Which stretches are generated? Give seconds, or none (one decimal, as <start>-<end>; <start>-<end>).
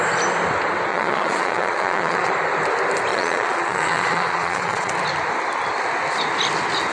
0.9-2.3; 3.1-4.9